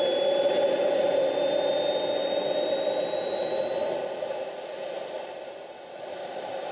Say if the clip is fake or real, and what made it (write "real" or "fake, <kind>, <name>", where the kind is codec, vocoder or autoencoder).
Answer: real